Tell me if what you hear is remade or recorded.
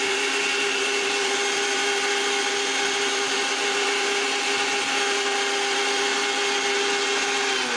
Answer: recorded